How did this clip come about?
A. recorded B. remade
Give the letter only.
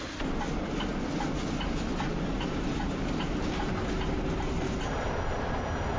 A